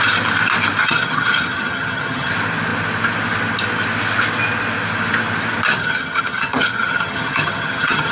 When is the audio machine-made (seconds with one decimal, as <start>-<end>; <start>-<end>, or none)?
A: 0.8-2.3; 5.7-8.1